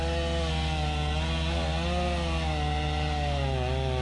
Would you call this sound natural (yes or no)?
yes